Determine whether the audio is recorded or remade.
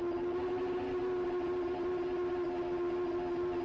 recorded